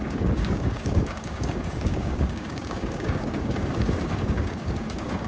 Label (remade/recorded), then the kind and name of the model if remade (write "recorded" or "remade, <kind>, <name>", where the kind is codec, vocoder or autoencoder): remade, codec, DAC